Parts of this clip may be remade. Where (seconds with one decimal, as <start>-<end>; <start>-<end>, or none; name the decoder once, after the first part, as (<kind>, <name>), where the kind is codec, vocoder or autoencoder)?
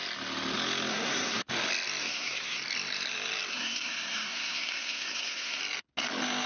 0.9-1.4 (codec, SNAC); 2.0-2.6; 3.5-5.6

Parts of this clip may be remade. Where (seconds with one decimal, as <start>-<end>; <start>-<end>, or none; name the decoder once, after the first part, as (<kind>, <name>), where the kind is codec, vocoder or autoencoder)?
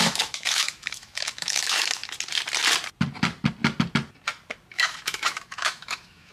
0.0-2.0 (autoencoder, DAC-VAE); 4.7-6.3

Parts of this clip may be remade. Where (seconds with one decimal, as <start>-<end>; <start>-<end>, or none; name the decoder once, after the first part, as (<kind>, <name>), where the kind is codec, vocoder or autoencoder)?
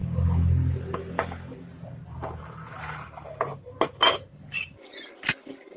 none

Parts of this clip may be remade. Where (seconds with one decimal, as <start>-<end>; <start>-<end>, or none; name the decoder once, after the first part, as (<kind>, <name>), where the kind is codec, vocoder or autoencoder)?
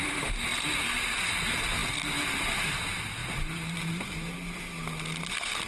3.2-3.9 (vocoder, BigVGAN v2)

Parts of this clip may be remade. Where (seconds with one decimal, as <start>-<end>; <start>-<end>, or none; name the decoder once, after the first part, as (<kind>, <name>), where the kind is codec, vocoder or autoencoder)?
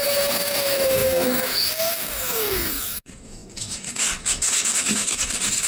0.0-5.7 (codec, DAC)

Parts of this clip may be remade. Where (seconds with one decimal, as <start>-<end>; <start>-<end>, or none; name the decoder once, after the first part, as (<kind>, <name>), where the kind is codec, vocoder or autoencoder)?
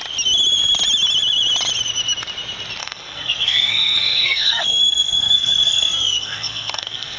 2.8-7.2 (codec, SNAC)